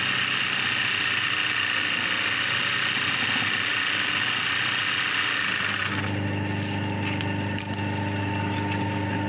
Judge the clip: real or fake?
real